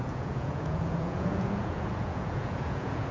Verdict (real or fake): fake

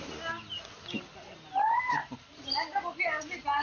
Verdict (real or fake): real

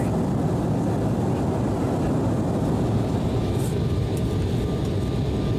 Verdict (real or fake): real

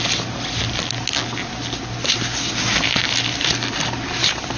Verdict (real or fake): real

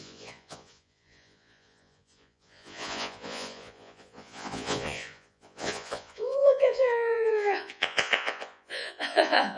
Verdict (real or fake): fake